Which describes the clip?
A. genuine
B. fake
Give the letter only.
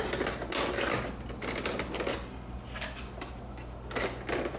A